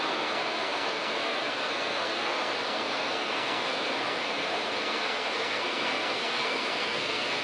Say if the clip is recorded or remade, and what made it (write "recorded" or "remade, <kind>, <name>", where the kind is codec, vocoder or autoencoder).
remade, codec, SNAC